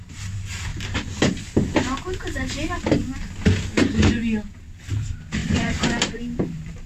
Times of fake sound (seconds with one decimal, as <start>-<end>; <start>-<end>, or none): 5.4-6.9